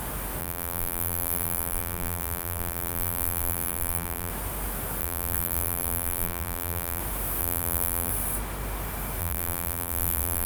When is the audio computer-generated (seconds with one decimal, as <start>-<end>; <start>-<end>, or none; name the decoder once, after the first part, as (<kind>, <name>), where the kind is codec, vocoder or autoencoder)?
0.4-4.3 (vocoder, BigVGAN v2); 5.0-7.0; 7.4-8.1; 9.2-10.5

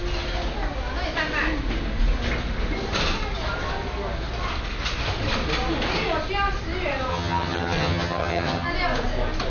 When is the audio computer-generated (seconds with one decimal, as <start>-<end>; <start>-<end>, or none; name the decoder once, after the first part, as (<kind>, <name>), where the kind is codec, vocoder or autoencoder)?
7.1-8.7 (vocoder, HiFi-GAN)

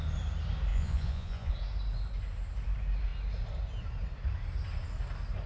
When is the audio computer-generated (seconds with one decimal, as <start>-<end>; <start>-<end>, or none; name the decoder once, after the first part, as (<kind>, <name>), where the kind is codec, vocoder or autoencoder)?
0.7-1.5 (vocoder, Vocos)

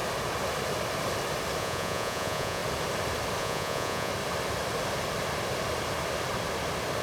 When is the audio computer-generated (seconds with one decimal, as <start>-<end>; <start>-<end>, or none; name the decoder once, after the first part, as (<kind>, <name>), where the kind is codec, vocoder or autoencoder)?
1.6-2.6 (vocoder, Vocos); 3.4-4.1

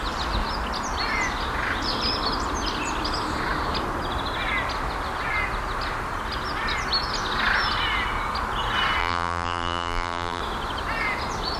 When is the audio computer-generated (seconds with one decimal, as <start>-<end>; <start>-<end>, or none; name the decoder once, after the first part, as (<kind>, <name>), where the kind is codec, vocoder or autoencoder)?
9.0-10.4 (vocoder, BigVGAN v2)

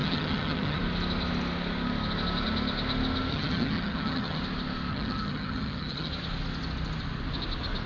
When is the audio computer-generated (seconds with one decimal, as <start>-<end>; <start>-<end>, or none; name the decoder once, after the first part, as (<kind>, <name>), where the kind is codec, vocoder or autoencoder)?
0.0-0.8 (vocoder, HiFi-GAN); 3.3-4.4; 4.9-6.1